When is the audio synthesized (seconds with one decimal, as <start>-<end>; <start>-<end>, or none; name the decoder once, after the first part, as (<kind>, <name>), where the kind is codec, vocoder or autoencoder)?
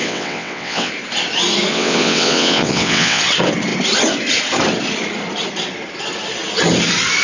0.0-0.9 (vocoder, WaveNeXt); 1.7-3.2